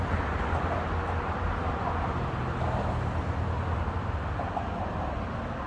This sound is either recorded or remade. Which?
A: recorded